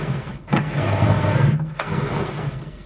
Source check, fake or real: fake